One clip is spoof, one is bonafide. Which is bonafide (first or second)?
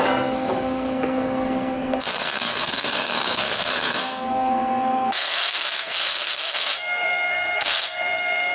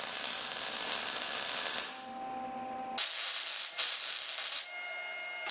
second